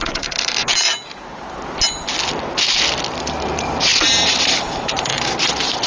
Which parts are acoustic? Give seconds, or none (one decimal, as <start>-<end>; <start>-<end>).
0.7-3.2